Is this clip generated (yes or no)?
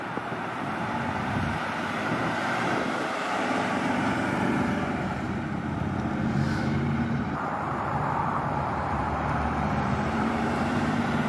yes